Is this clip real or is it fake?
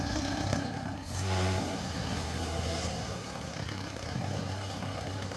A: fake